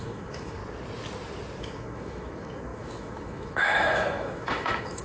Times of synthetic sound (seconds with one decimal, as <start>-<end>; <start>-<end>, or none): 0.0-0.6; 1.6-5.0